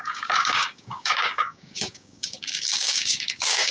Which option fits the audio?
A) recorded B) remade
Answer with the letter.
B